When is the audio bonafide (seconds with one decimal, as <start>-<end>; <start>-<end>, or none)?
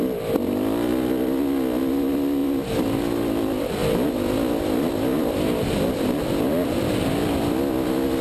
0.0-8.2